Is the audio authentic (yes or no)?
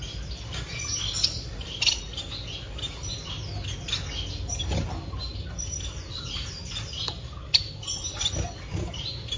yes